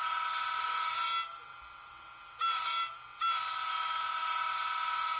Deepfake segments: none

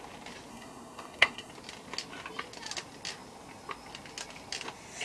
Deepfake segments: 0.5-1.5

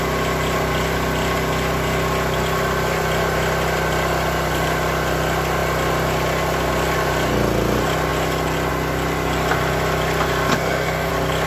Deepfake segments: 10.5-11.1

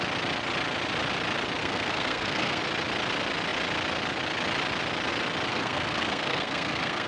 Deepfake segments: 1.6-2.6; 5.5-7.1